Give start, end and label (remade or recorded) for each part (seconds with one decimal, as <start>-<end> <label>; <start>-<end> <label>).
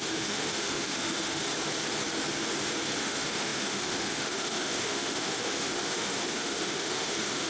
0.0-1.4 remade; 1.4-3.0 recorded; 3.0-7.5 remade